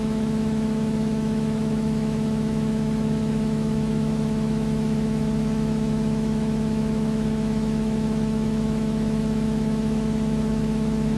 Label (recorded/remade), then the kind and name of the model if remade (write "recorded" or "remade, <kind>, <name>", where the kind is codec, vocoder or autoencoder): remade, autoencoder, DAC-VAE